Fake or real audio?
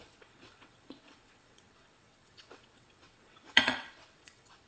fake